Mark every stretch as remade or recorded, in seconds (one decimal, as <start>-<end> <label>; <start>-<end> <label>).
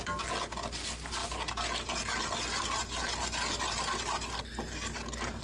0.0-5.4 recorded